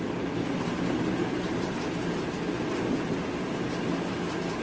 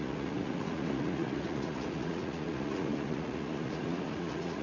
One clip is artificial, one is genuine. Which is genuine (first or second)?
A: first